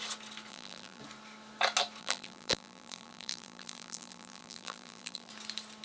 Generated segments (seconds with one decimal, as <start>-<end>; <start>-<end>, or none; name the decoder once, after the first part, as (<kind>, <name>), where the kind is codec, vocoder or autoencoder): 0.5-1.0 (vocoder, BigVGAN v2); 2.0-5.3